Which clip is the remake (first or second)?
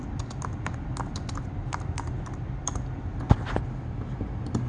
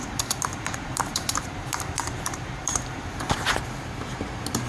second